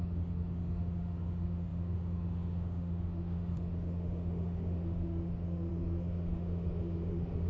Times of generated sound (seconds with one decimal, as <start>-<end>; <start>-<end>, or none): 0.0-7.5